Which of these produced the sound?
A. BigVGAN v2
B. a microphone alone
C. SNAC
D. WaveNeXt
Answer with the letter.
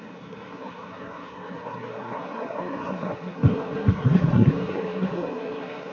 C